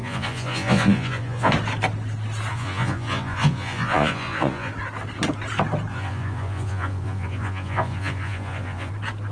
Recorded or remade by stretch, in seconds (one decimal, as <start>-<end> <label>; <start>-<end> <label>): 0.0-1.5 remade; 1.5-2.5 recorded; 2.5-4.7 remade; 4.7-5.9 recorded; 5.9-8.9 remade; 8.9-9.3 recorded